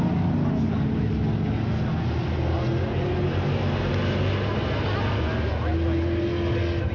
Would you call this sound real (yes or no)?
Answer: yes